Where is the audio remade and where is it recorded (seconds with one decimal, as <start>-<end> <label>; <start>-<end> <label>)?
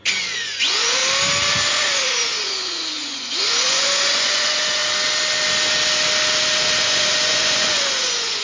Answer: 0.0-1.0 remade; 1.0-1.7 recorded; 1.7-4.8 remade; 4.8-6.8 recorded; 6.8-8.4 remade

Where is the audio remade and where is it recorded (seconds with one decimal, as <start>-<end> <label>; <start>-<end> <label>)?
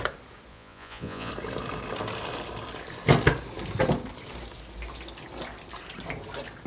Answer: 0.0-0.5 recorded; 0.5-1.3 remade; 1.3-6.7 recorded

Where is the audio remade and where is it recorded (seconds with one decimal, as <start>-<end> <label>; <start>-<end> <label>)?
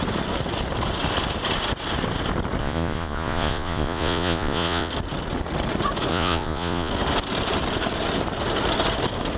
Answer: 0.0-2.6 recorded; 2.6-4.9 remade; 4.9-6.1 recorded; 6.1-6.9 remade; 6.9-9.4 recorded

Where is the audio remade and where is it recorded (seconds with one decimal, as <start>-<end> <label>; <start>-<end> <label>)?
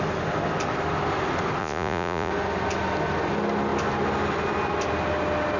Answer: 0.0-1.6 recorded; 1.6-2.3 remade; 2.3-5.6 recorded